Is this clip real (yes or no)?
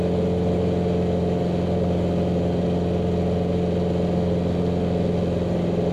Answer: yes